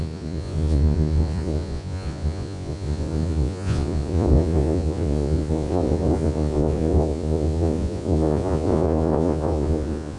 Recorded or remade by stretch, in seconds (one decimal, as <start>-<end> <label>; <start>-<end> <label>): 0.0-10.2 remade